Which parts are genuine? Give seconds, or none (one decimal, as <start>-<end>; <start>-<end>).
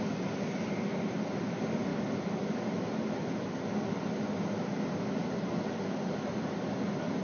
0.0-7.2